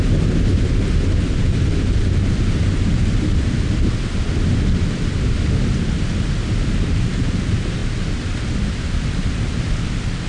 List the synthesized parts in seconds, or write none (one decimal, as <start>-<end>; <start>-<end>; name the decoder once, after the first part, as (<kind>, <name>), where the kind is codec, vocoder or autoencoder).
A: none